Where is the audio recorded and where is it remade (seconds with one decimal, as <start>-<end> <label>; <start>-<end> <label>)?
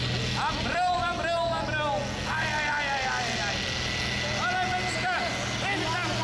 0.0-6.2 recorded